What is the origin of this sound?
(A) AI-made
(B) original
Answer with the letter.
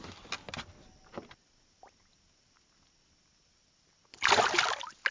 B